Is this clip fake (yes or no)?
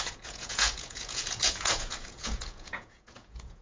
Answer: yes